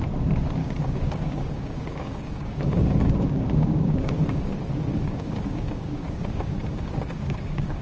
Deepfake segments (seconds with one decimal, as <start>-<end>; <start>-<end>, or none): 0.6-4.5; 4.9-7.8